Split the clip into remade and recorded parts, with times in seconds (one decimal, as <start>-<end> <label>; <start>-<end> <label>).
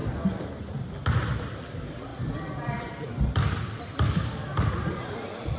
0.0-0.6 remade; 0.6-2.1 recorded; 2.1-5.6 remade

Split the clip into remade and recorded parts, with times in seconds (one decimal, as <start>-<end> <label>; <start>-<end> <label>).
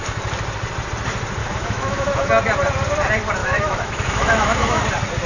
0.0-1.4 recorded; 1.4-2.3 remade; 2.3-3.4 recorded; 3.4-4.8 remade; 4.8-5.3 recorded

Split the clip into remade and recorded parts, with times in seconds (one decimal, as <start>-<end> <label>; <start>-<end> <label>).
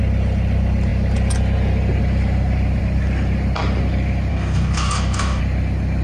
0.0-4.3 recorded; 4.3-5.4 remade; 5.4-6.0 recorded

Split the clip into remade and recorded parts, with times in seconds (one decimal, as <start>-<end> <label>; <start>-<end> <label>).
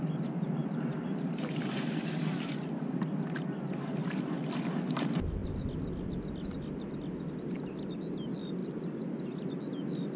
0.0-0.6 recorded; 0.6-2.5 remade; 2.5-10.2 recorded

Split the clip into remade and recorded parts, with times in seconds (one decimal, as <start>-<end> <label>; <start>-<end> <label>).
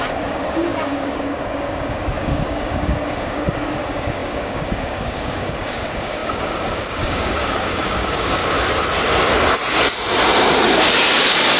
0.0-8.4 remade; 8.4-10.9 recorded; 10.9-11.6 remade